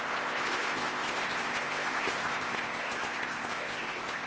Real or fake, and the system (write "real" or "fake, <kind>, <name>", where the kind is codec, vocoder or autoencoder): fake, codec, ZipCodec